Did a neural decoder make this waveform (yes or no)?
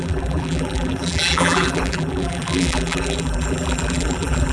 yes